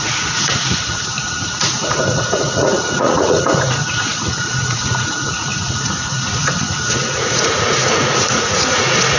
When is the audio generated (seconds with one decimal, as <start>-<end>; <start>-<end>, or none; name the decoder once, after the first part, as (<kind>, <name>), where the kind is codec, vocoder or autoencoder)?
0.0-9.2 (vocoder, Vocos)